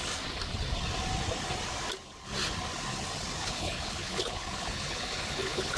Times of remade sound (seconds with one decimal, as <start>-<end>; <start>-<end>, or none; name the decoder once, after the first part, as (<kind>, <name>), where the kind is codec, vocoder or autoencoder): 3.4-5.8 (codec, HILCodec)